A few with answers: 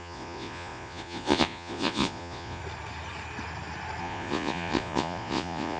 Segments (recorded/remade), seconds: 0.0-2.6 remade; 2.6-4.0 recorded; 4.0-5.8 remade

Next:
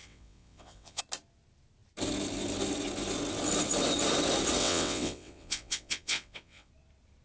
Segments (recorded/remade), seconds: 0.0-1.0 remade; 1.0-4.6 recorded; 4.6-6.7 remade; 6.7-7.2 recorded

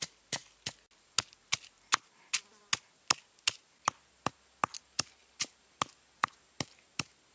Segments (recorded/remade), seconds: 0.0-7.3 recorded

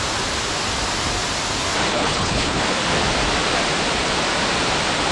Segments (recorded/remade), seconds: 0.0-1.9 recorded; 1.9-2.6 remade; 2.6-5.1 recorded